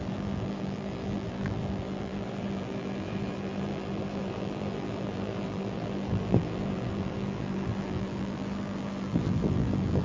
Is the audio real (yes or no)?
no